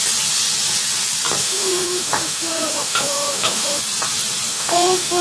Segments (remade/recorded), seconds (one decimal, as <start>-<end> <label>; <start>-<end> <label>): 0.0-1.4 recorded; 1.4-3.8 remade; 3.8-4.5 recorded; 4.5-5.2 remade